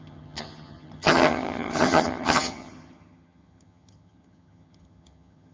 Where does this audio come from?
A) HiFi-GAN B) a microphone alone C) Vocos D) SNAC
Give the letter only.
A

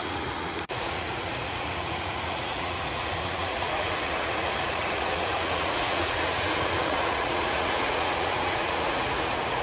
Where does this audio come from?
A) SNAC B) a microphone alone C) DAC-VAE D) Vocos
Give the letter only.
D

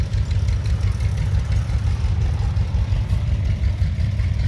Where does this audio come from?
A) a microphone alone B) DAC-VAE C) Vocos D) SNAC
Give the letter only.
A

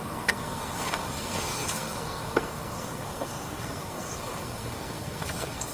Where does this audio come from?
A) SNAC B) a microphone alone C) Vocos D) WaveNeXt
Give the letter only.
A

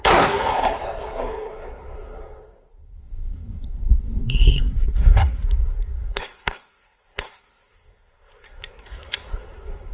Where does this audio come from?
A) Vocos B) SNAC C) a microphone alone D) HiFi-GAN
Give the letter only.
B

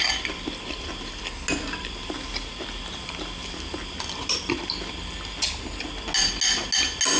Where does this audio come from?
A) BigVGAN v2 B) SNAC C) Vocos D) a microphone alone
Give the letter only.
D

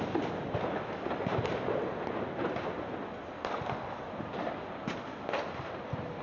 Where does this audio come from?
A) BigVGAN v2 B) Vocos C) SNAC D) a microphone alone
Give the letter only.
D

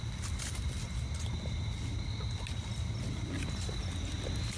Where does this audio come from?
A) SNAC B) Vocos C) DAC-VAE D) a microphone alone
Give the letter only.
D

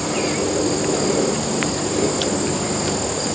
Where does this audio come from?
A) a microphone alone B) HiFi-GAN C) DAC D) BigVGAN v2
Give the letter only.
A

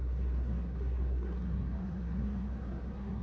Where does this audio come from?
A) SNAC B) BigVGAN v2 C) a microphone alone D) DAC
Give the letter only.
A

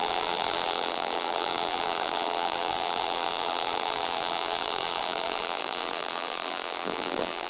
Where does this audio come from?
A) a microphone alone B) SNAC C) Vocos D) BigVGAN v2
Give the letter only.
D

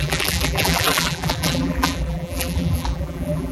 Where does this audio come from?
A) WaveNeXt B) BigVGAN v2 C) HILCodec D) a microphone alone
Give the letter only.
B